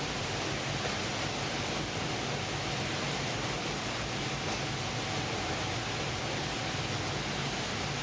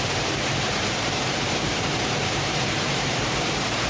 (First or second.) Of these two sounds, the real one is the first